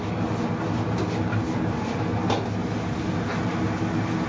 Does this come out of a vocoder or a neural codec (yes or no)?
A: no